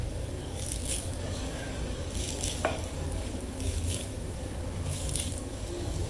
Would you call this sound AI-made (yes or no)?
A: yes